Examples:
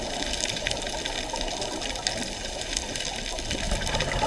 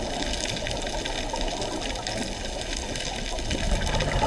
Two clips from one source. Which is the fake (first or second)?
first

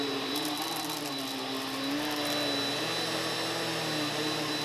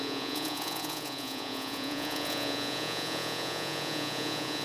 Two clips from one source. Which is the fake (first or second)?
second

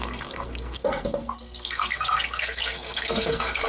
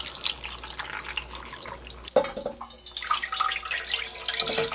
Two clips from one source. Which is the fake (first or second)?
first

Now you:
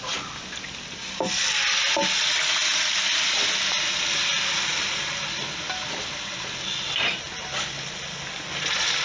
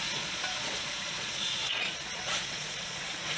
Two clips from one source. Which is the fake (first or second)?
second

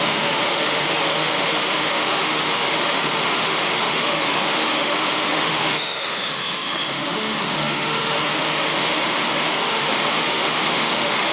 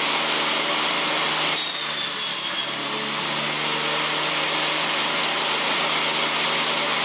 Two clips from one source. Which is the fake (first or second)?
first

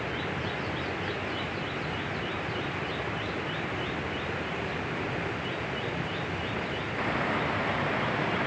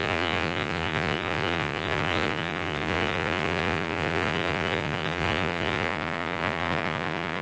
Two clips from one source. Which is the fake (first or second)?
second